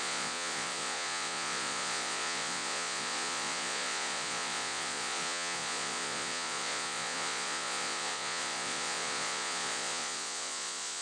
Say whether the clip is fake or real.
fake